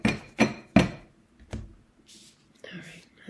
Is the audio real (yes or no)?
yes